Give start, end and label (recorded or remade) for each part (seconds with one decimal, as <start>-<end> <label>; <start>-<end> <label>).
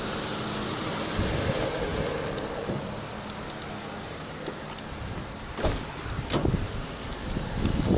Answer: 0.0-8.0 recorded